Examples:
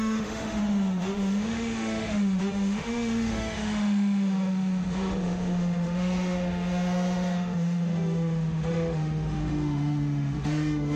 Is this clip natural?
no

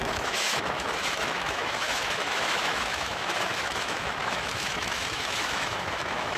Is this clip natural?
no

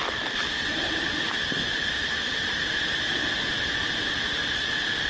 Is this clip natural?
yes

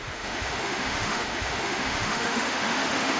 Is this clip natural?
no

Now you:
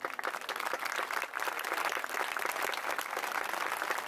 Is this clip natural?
yes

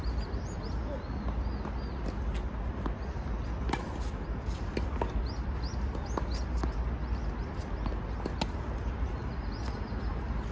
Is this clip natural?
yes